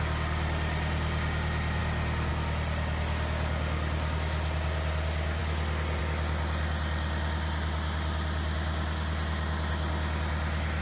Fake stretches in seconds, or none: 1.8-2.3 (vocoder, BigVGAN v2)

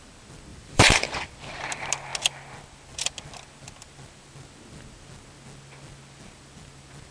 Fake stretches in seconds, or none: 0.5-1.7 (vocoder, BigVGAN v2)

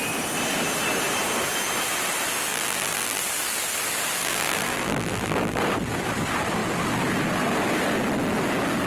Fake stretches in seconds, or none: 2.5-3.2 (vocoder, BigVGAN v2); 4.2-5.6

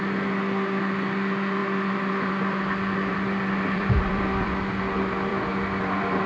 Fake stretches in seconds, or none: 1.6-2.3 (vocoder, BigVGAN v2); 3.1-4.7; 5.3-6.3

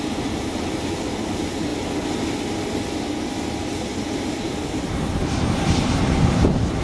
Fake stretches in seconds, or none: 0.0-1.7 (vocoder, BigVGAN v2); 5.5-6.8

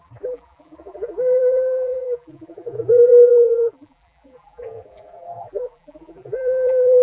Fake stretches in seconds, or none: 0.0-7.0 (vocoder, BigVGAN v2)